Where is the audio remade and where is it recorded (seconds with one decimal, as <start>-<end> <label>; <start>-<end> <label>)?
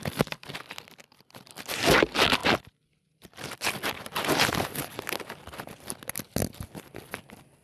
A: 0.0-7.6 recorded